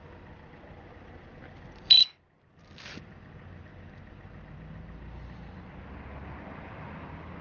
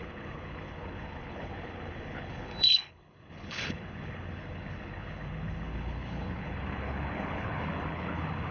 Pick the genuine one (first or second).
first